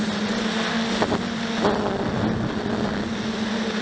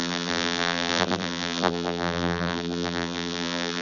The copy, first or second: second